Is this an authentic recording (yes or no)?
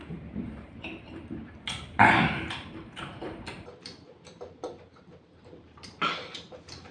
no